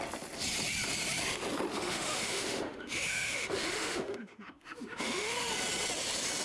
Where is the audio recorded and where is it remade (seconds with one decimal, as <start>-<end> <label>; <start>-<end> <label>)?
0.0-1.7 recorded; 1.7-5.5 remade; 5.5-6.4 recorded